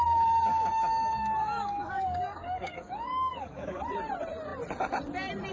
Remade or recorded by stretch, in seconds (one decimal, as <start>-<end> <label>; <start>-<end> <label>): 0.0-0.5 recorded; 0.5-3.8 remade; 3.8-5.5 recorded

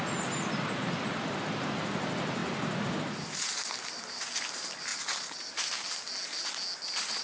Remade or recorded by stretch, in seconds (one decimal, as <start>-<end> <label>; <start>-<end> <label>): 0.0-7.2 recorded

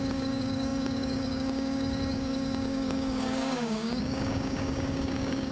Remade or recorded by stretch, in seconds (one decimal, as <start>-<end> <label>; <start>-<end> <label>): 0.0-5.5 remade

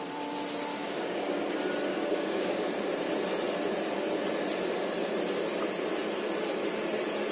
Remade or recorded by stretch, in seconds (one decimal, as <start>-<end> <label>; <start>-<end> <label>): 0.0-0.7 recorded; 0.7-1.5 remade; 1.5-1.9 recorded; 1.9-2.8 remade; 2.8-7.3 recorded

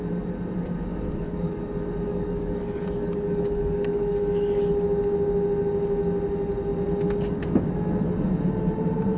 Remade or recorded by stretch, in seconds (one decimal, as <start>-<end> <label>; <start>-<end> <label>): 0.0-0.9 recorded; 0.9-1.6 remade; 1.6-2.1 recorded; 2.1-4.6 remade; 4.6-9.2 recorded

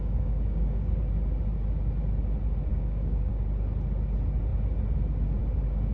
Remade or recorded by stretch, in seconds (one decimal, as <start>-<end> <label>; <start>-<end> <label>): 0.0-1.0 remade; 1.0-2.7 recorded; 2.7-3.3 remade; 3.3-5.9 recorded

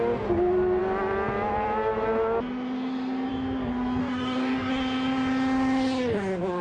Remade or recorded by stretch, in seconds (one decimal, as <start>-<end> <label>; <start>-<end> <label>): 0.0-4.0 recorded; 4.0-4.7 remade; 4.7-6.6 recorded